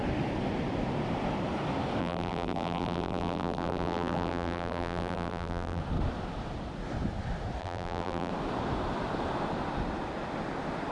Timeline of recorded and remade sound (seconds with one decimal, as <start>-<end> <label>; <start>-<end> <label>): 0.0-2.0 recorded; 2.0-5.8 remade; 5.8-7.6 recorded; 7.6-8.3 remade; 8.3-10.9 recorded

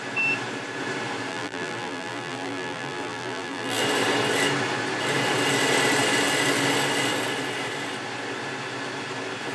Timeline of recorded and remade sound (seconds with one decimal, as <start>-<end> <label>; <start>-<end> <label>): 0.0-1.3 recorded; 1.3-3.8 remade; 3.8-9.5 recorded

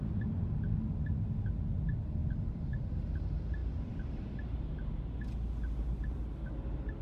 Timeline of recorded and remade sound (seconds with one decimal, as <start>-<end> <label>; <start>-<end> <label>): 0.0-2.2 recorded; 2.2-3.2 remade; 3.2-3.6 recorded; 3.6-4.2 remade; 4.2-7.0 recorded

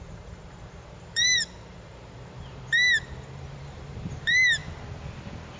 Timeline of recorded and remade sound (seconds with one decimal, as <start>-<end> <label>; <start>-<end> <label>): 0.0-4.6 remade; 4.6-5.6 recorded

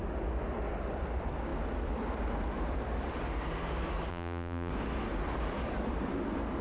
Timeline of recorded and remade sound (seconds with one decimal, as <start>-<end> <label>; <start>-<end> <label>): 0.0-4.1 recorded; 4.1-4.7 remade; 4.7-6.6 recorded

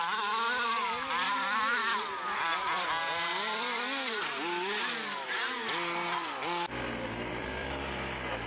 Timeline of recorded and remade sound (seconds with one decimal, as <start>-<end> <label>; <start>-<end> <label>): 0.0-3.0 remade; 3.0-7.3 recorded; 7.3-8.5 remade

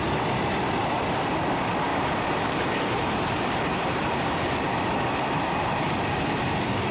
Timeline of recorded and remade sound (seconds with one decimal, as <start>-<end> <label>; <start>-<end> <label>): 0.0-1.9 recorded; 1.9-6.0 remade; 6.0-6.9 recorded